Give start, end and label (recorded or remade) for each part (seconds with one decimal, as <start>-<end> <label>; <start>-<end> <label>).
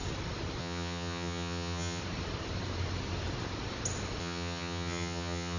0.0-0.6 recorded; 0.6-2.0 remade; 2.0-4.2 recorded; 4.2-5.6 remade